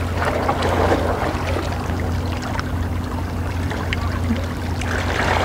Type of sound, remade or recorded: recorded